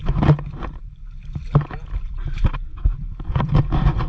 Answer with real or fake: real